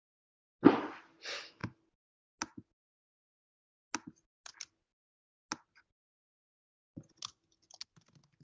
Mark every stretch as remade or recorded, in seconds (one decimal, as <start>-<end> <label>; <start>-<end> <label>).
0.0-8.4 recorded